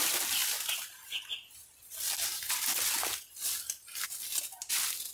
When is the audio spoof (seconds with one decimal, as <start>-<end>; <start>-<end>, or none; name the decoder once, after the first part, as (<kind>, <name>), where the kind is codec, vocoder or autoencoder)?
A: none